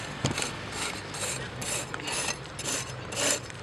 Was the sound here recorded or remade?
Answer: remade